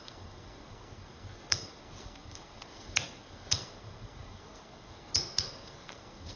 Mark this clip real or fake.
fake